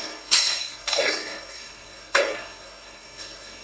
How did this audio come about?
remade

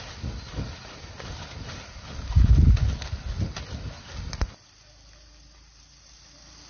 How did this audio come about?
recorded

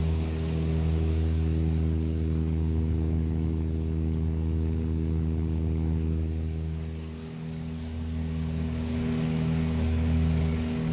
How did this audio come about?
remade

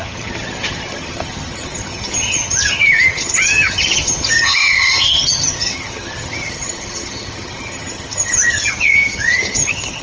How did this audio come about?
remade